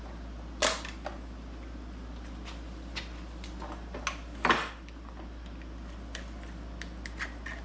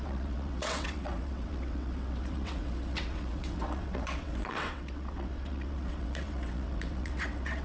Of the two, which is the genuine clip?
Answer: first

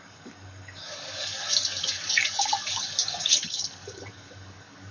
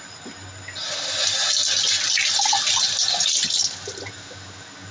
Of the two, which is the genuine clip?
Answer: second